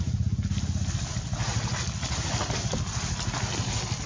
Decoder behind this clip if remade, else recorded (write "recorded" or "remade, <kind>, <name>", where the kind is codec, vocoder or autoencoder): recorded